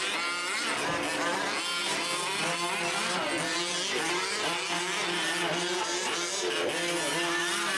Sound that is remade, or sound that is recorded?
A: recorded